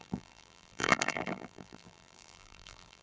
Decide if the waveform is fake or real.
fake